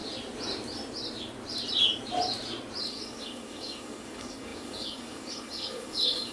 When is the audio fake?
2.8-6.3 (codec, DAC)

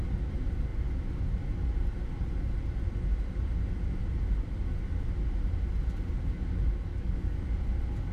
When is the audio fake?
6.9-7.4 (codec, DAC)

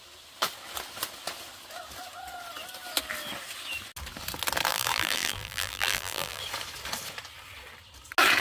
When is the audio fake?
4.7-6.4 (vocoder, BigVGAN v2)